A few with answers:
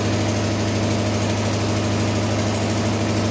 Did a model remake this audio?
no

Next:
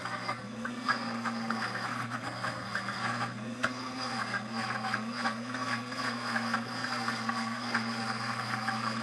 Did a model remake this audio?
yes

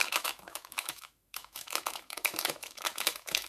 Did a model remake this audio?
yes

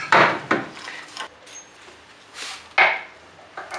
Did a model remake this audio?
no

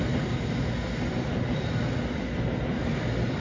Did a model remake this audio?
no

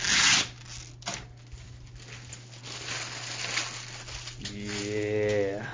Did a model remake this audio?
no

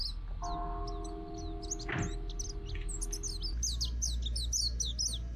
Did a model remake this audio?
no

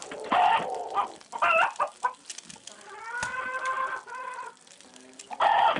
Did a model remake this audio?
no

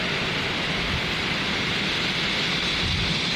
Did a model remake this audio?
no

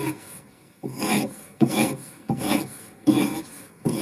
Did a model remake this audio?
yes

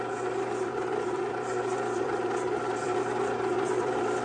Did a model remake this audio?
yes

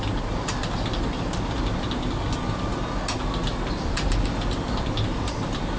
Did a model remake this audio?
no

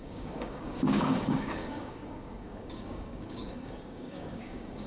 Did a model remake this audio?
yes